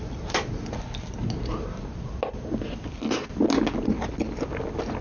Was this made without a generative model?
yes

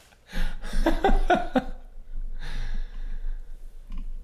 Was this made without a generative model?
yes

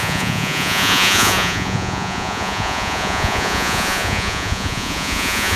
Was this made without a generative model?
no